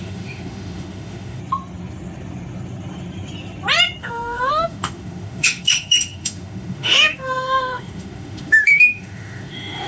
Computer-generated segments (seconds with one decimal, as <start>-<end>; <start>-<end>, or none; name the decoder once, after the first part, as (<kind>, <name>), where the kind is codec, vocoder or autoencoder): 0.0-1.4 (autoencoder, DAC-VAE); 4.0-9.9